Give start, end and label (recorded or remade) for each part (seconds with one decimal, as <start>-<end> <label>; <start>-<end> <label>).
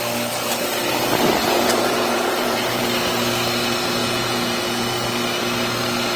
0.0-1.4 recorded; 1.4-2.8 remade; 2.8-4.0 recorded; 4.0-5.1 remade; 5.1-6.2 recorded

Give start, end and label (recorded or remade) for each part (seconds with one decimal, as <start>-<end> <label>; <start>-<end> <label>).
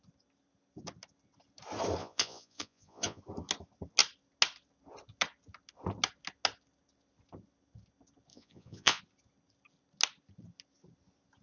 0.0-2.0 recorded; 2.0-3.2 remade; 3.2-8.3 recorded; 8.3-9.0 remade; 9.0-11.4 recorded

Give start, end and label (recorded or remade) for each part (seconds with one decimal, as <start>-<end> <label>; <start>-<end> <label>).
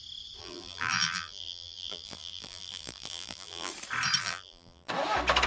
0.0-0.4 recorded; 0.4-3.7 remade; 3.7-4.2 recorded; 4.2-4.9 remade; 4.9-5.5 recorded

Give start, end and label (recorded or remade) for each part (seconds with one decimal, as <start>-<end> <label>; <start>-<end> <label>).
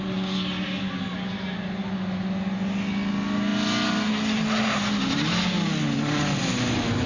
0.0-7.1 recorded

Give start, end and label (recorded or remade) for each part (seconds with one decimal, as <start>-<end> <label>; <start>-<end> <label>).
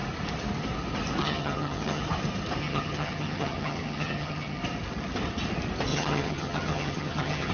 0.0-1.2 recorded; 1.2-2.0 remade; 2.0-2.6 recorded; 2.6-4.6 remade; 4.6-5.9 recorded; 5.9-7.5 remade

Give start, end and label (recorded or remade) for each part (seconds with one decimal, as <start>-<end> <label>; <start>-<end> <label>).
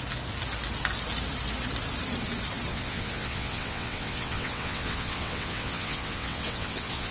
0.0-2.7 recorded; 2.7-7.1 remade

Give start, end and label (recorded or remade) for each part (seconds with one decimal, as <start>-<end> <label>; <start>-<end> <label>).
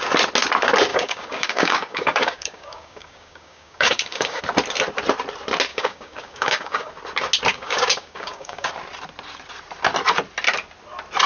0.0-0.9 recorded; 0.9-4.4 remade; 4.4-5.7 recorded; 5.7-6.9 remade; 6.9-7.5 recorded; 7.5-8.7 remade; 8.7-11.3 recorded